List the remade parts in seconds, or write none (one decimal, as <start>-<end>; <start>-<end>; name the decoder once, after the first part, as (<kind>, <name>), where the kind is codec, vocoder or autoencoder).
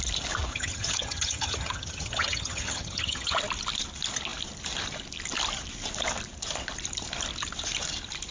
0.5-3.4 (vocoder, HiFi-GAN)